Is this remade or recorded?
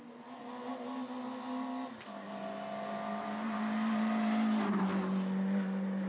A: recorded